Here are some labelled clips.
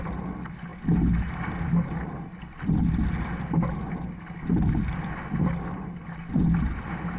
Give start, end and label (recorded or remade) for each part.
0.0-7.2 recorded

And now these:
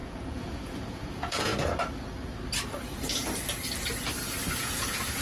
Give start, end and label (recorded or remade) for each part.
0.0-1.5 remade; 1.5-4.6 recorded; 4.6-5.2 remade

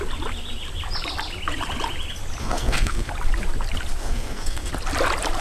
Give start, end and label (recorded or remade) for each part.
0.0-2.4 recorded; 2.4-3.1 remade; 3.1-4.0 recorded; 4.0-4.7 remade; 4.7-5.4 recorded

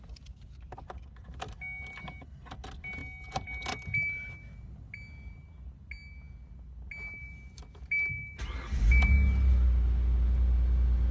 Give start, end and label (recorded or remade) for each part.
0.0-11.1 recorded

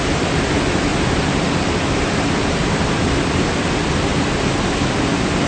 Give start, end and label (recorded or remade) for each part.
0.0-0.9 recorded; 0.9-3.0 remade; 3.0-5.5 recorded

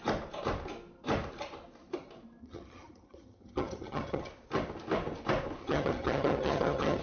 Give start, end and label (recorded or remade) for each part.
0.0-2.4 recorded; 2.4-4.3 remade; 4.3-5.6 recorded; 5.6-7.0 remade

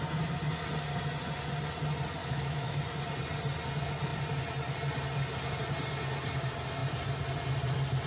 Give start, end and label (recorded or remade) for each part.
0.0-2.2 recorded; 2.2-2.8 remade; 2.8-8.1 recorded